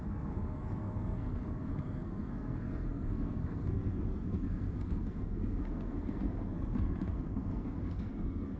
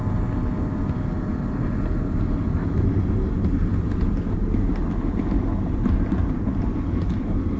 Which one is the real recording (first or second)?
second